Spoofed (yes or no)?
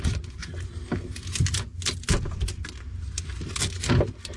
no